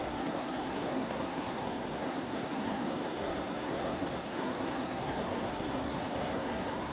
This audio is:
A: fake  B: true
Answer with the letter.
A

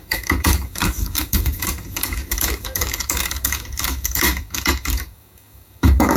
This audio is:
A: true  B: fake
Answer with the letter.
B